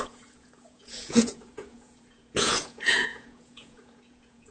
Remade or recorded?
remade